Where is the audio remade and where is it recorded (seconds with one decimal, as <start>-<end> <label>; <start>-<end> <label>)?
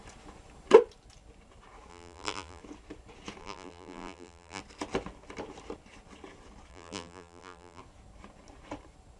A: 0.0-1.9 recorded; 1.9-2.6 remade; 2.6-3.4 recorded; 3.4-4.6 remade; 4.6-6.7 recorded; 6.7-7.8 remade; 7.8-9.2 recorded